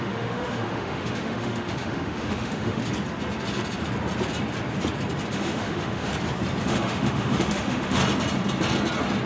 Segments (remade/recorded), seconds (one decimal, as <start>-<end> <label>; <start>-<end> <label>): 0.0-2.8 remade; 2.8-5.3 recorded; 5.3-6.1 remade; 6.1-6.6 recorded; 6.6-8.0 remade; 8.0-9.3 recorded